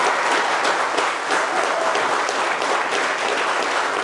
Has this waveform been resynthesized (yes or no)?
no